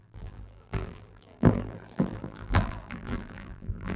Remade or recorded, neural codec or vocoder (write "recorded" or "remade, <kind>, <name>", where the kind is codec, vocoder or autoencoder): remade, vocoder, BigVGAN v2